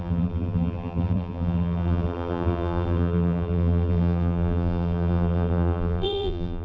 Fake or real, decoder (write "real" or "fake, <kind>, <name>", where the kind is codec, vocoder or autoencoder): fake, vocoder, BigVGAN v2